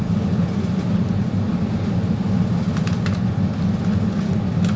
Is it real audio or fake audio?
real